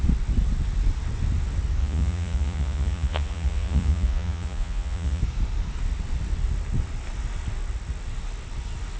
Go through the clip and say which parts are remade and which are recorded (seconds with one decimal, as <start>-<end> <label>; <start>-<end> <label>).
0.0-1.8 recorded; 1.8-5.2 remade; 5.2-9.0 recorded